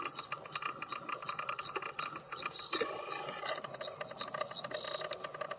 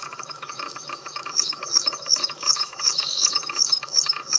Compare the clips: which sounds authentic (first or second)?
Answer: first